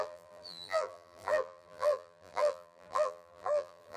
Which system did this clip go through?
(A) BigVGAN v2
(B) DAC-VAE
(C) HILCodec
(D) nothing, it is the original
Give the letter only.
A